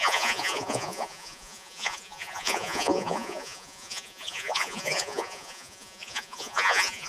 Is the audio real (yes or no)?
no